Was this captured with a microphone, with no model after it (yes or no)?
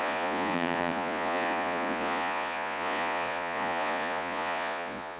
no